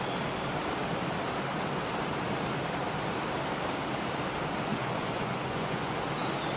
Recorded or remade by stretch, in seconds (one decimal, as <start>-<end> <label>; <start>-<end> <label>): 0.0-4.7 recorded; 4.7-6.0 remade; 6.0-6.6 recorded